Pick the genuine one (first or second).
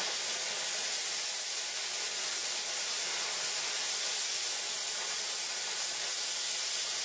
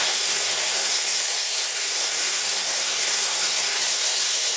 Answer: first